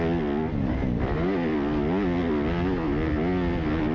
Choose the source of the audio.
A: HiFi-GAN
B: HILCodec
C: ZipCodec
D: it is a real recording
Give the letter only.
D